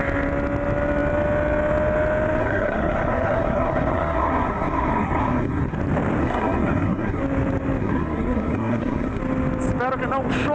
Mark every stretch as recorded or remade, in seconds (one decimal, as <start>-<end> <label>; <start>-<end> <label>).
0.0-2.4 recorded; 2.4-5.8 remade; 5.8-6.2 recorded; 6.2-7.2 remade; 7.2-7.8 recorded; 7.8-9.2 remade; 9.2-10.5 recorded